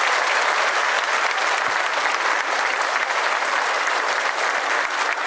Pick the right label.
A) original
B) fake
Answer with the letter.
A